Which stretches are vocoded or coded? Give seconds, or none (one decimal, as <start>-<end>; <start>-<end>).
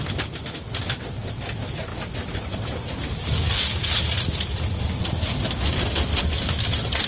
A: none